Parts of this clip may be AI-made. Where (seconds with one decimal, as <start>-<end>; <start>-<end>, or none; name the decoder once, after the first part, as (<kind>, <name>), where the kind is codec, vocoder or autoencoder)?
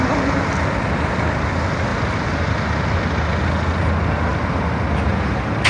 none